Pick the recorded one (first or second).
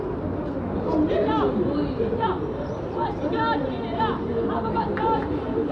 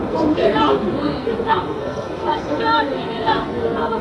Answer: first